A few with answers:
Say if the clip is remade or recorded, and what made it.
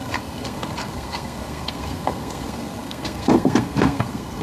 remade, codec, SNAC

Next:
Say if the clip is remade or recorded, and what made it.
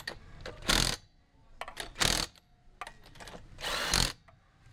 recorded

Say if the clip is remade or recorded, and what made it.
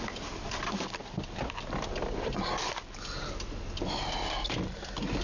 recorded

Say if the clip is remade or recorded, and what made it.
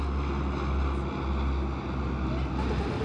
recorded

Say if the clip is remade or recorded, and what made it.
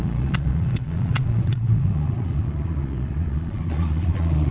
remade, vocoder, Vocos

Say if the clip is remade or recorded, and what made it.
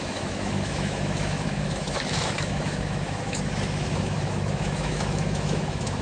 remade, autoencoder, DAC-VAE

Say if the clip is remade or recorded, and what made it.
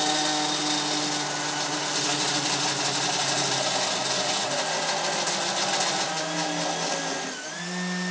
recorded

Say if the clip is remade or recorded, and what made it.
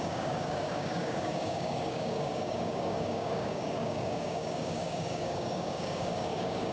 remade, codec, DAC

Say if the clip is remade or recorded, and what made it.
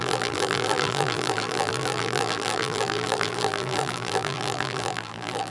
remade, vocoder, BigVGAN v2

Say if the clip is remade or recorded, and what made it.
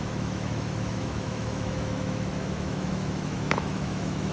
remade, autoencoder, DAC-VAE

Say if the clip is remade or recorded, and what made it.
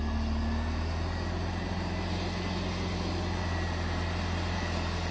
recorded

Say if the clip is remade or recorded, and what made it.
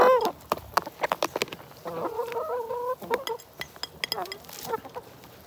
recorded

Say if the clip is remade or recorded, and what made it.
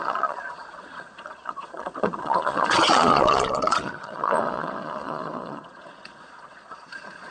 remade, vocoder, Vocos